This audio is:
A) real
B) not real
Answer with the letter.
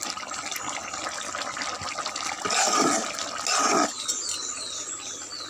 A